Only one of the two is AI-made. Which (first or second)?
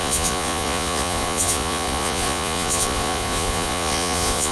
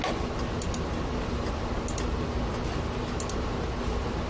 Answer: first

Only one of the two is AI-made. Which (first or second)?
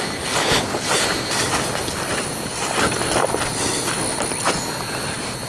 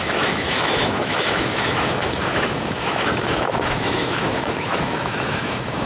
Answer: second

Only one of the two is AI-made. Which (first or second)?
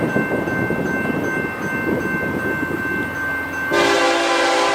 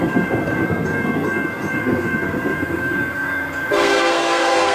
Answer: second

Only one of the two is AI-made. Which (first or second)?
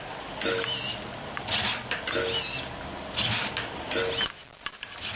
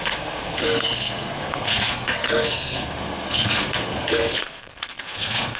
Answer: second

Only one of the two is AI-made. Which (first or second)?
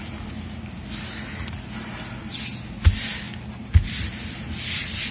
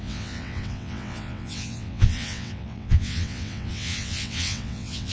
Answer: second